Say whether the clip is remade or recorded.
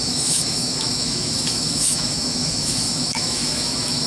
remade